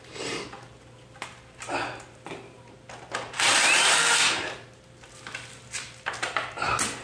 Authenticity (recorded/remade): recorded